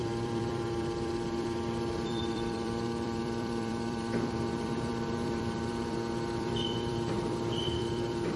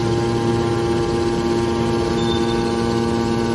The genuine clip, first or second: second